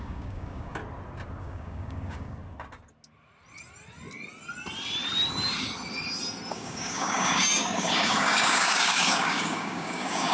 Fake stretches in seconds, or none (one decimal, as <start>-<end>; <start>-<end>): 0.0-0.8; 1.4-2.4; 6.5-10.3